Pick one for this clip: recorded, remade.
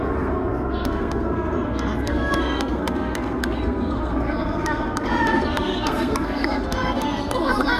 remade